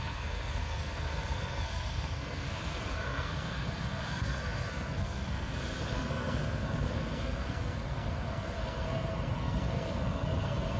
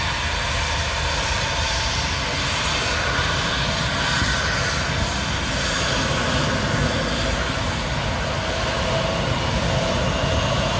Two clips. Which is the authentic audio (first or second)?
second